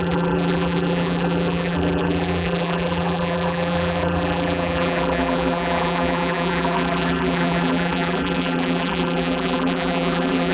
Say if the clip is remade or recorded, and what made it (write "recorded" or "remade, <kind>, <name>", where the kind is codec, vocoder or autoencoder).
remade, vocoder, BigVGAN v2